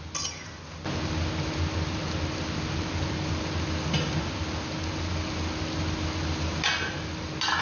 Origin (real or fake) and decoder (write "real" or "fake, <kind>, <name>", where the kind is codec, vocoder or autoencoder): real